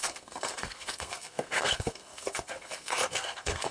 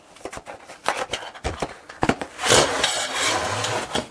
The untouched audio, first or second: second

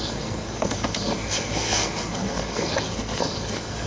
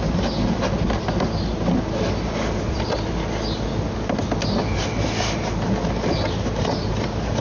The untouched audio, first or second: second